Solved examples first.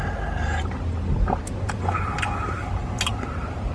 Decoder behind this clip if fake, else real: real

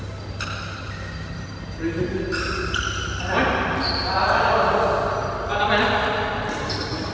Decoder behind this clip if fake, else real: real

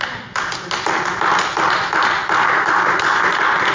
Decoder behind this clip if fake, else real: real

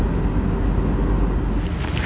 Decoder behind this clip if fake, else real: real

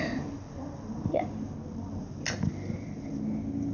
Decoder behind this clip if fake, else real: real